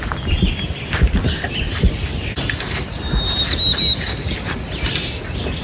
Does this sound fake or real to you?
real